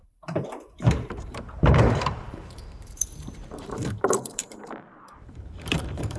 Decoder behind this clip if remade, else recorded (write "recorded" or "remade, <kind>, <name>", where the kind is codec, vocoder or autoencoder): remade, vocoder, BigVGAN v2